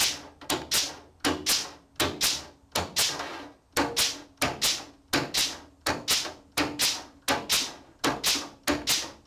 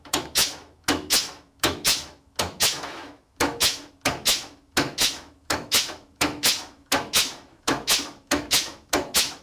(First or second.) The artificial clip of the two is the second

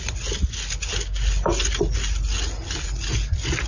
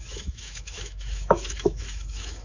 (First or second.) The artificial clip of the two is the second